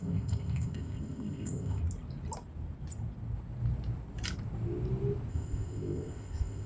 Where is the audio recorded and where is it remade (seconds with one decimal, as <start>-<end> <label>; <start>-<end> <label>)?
0.0-1.8 remade; 1.8-5.3 recorded; 5.3-6.7 remade